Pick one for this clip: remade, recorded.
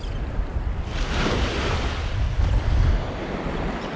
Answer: recorded